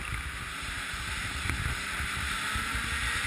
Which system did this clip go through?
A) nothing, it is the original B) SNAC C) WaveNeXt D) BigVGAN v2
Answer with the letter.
A